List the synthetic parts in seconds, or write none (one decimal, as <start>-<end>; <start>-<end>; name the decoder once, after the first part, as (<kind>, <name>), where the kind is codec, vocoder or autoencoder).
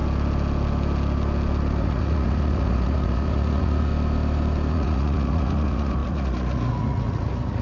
1.8-3.9 (vocoder, Vocos); 4.7-7.6